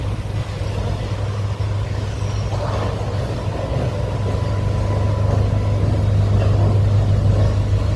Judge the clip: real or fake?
real